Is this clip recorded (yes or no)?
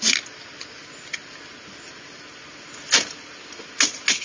yes